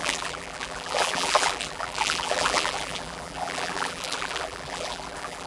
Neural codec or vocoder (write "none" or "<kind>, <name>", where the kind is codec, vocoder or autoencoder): vocoder, BigVGAN v2